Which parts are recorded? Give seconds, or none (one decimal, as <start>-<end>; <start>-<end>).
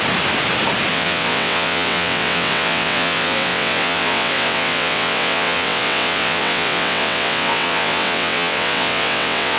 0.0-0.9